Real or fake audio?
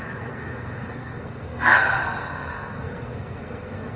fake